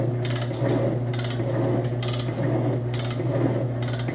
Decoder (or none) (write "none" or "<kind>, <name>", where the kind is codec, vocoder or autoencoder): none